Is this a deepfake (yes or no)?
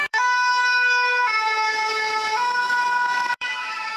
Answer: yes